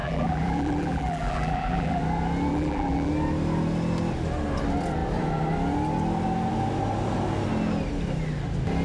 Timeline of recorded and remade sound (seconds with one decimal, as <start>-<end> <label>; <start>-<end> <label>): 0.0-2.0 remade; 2.0-2.5 recorded; 2.5-3.1 remade; 3.1-8.8 recorded

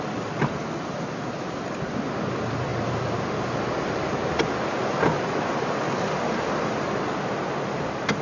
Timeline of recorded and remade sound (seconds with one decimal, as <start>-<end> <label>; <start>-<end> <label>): 0.0-8.2 recorded

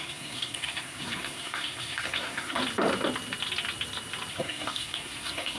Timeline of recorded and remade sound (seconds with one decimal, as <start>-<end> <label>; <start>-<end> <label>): 0.0-2.6 remade; 2.6-4.3 recorded; 4.3-5.6 remade

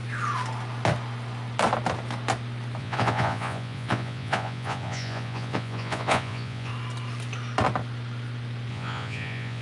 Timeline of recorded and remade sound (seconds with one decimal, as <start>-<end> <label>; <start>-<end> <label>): 0.0-2.8 recorded; 2.8-6.7 remade; 6.7-8.7 recorded; 8.7-9.6 remade

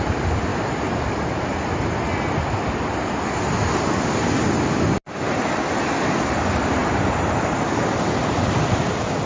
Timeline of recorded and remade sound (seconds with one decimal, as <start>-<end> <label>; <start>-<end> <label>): 0.0-9.3 recorded

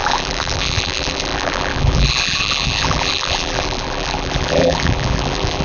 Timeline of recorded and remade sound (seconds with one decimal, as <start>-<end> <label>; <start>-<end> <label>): 0.0-5.6 remade

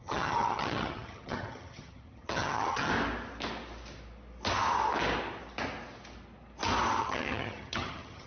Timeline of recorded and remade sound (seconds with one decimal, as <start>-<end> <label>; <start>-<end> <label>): 0.0-2.9 remade; 2.9-7.0 recorded; 7.0-8.3 remade

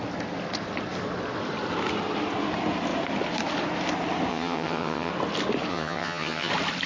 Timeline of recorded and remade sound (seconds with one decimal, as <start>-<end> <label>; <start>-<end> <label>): 0.0-4.3 recorded; 4.3-5.1 remade; 5.1-5.7 recorded; 5.7-6.5 remade; 6.5-6.9 recorded